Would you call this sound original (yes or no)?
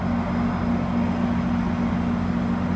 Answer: yes